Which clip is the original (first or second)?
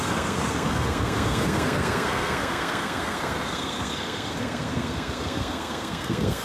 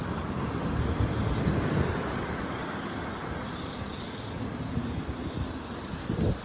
second